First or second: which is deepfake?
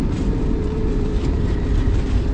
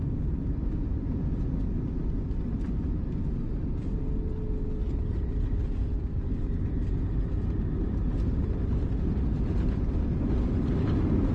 first